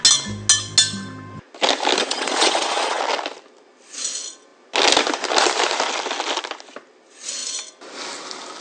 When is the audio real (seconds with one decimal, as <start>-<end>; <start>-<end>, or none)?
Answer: 0.0-2.0; 3.0-8.6